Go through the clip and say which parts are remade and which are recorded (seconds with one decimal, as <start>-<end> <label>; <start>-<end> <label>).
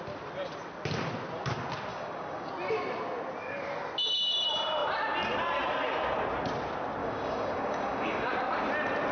0.0-1.9 recorded; 1.9-2.5 remade; 2.5-7.0 recorded; 7.0-8.3 remade; 8.3-9.1 recorded